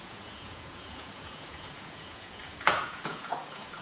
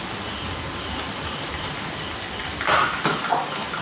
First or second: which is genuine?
second